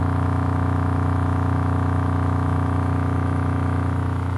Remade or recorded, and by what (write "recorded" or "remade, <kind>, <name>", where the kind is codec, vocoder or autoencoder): remade, autoencoder, DAC-VAE